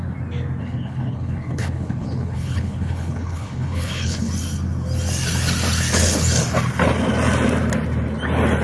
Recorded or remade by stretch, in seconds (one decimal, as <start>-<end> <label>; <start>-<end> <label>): 0.0-0.6 recorded; 0.6-4.3 remade; 4.3-8.6 recorded